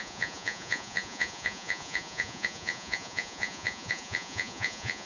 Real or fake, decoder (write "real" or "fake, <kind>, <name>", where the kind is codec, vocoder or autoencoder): fake, vocoder, Vocos